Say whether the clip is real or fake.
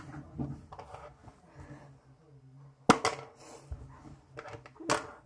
real